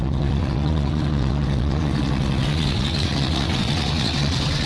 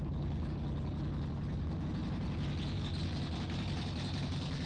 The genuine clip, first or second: second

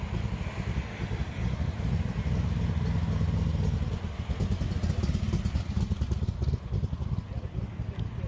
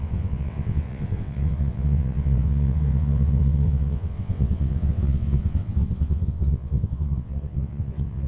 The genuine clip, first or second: first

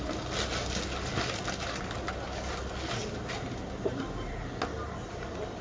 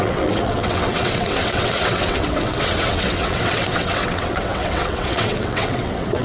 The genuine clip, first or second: first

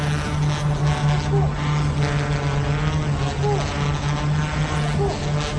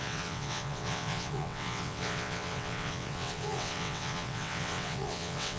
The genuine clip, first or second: first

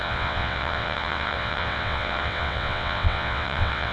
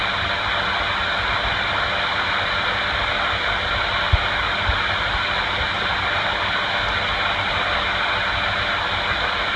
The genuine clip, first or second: second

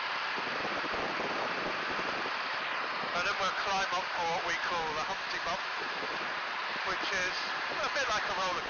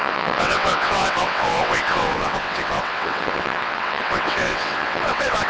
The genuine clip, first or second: first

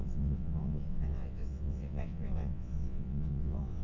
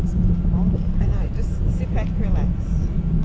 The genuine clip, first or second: second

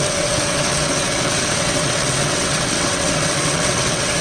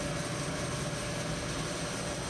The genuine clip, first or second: second